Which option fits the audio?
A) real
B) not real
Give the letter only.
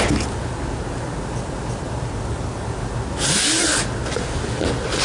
A